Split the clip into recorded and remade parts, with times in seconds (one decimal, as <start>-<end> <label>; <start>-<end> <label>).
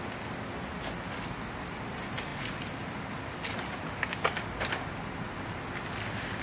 0.0-6.4 recorded